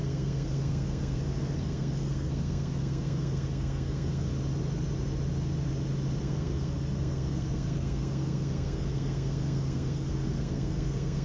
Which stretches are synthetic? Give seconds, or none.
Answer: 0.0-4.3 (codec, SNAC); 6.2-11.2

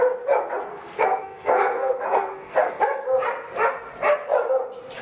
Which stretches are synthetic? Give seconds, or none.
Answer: 0.7-2.8 (codec, SNAC)

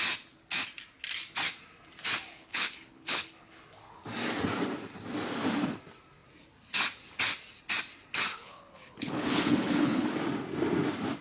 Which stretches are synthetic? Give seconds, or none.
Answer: 2.3-3.6 (codec, HILCodec); 8.3-10.1

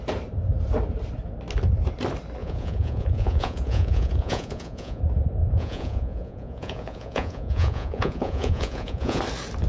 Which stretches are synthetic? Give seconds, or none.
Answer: 2.4-5.0 (vocoder, Vocos); 5.4-9.2

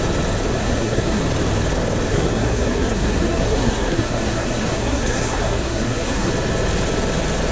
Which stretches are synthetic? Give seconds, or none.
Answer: 0.6-1.2 (codec, SNAC); 2.1-6.3

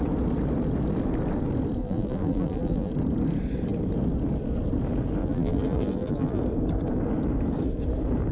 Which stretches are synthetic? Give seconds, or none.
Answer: 1.8-2.9 (vocoder, BigVGAN v2); 5.2-6.4

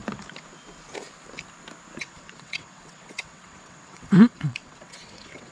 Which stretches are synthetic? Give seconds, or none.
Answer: 2.0-5.5 (vocoder, WaveNeXt)

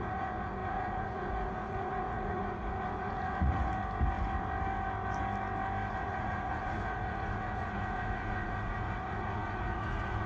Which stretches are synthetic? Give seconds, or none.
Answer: 0.0-3.8 (vocoder, Vocos); 5.9-10.3